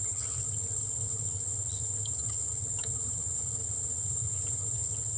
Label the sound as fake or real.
fake